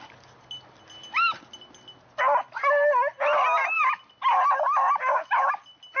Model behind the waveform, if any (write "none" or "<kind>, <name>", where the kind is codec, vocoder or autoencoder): none